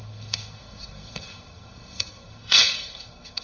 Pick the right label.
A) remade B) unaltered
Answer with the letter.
A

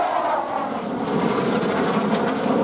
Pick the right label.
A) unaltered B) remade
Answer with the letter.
A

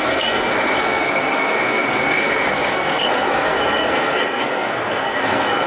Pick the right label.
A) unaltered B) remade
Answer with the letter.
B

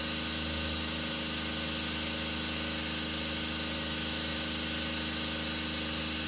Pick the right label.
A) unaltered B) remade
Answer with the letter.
A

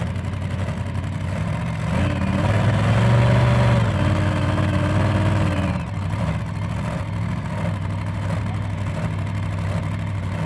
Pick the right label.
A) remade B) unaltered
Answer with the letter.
B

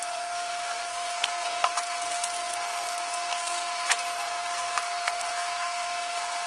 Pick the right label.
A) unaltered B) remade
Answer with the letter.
B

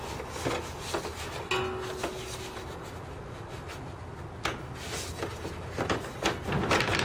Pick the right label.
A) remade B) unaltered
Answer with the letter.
B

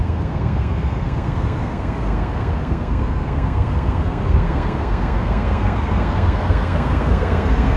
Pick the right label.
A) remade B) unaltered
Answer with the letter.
A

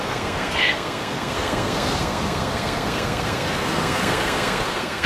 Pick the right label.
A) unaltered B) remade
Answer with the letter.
B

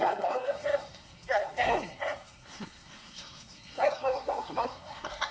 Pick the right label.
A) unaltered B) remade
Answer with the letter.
B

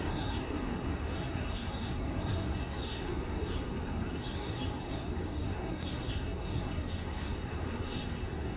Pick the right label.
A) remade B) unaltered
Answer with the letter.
A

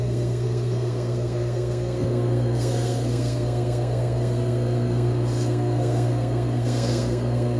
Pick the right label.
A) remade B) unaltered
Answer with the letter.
A